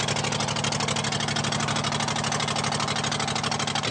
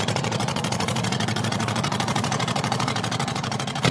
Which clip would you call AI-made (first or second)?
second